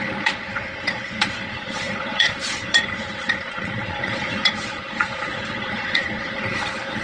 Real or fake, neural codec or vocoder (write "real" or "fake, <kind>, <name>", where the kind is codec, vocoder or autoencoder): fake, vocoder, Vocos